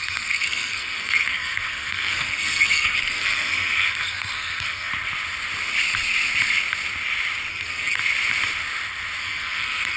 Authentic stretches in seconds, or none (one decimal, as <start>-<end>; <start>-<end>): 4.9-7.5; 8.0-9.2